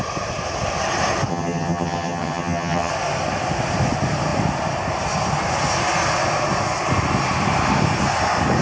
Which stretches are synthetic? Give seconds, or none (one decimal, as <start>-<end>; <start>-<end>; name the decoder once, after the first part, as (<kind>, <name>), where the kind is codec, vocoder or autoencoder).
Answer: 1.3-2.9 (vocoder, HiFi-GAN)